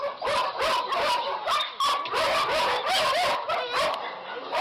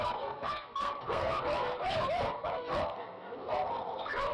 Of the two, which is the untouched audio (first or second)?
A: first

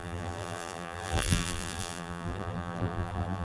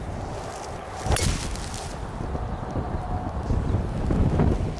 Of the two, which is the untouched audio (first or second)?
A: second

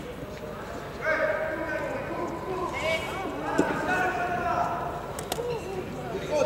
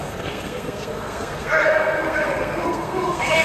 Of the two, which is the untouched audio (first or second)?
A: first